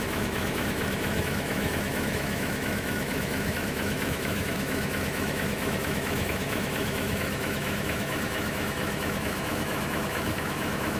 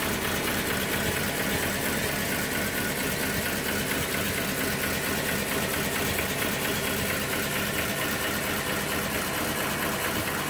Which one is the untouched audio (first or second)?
second